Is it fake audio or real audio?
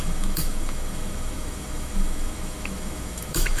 fake